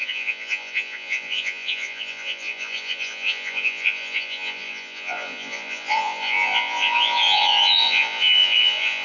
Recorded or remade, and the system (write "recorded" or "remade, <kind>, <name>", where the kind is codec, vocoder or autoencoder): remade, vocoder, Vocos